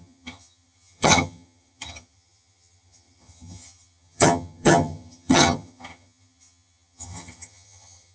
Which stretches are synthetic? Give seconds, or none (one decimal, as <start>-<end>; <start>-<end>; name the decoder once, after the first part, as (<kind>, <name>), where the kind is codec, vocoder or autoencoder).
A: 0.0-8.1 (vocoder, HiFi-GAN)